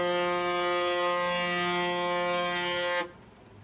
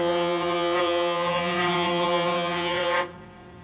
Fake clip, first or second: second